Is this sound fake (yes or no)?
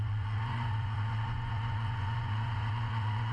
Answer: yes